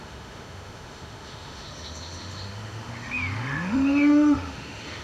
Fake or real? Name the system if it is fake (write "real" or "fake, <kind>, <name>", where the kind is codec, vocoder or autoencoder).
fake, autoencoder, DAC-VAE